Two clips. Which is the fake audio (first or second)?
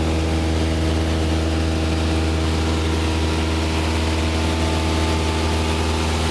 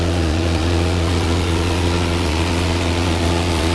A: second